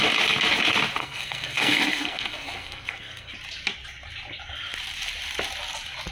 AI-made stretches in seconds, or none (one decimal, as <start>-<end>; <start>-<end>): 1.0-3.3